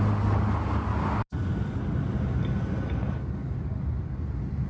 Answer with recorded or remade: recorded